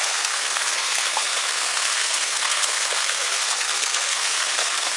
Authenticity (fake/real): fake